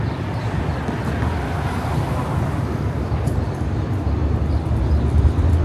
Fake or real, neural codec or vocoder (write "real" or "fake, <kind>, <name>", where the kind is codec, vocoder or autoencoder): real